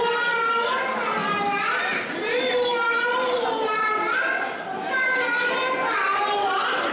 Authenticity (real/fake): real